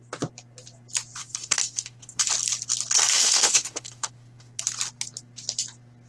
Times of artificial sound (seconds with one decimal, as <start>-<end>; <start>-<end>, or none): 1.2-2.3; 3.1-4.6